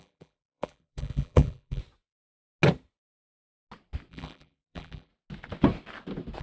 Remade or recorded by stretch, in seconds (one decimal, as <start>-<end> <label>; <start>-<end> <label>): 0.0-1.8 remade; 1.8-4.1 recorded; 4.1-5.1 remade; 5.1-6.4 recorded